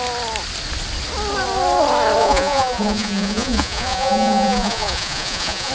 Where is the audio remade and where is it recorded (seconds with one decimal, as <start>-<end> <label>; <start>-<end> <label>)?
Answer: 0.0-2.2 recorded; 2.2-5.7 remade